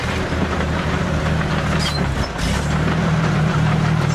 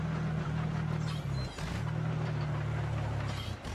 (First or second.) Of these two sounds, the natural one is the second